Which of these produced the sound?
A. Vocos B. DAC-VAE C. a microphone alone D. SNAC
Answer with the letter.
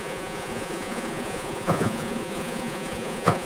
A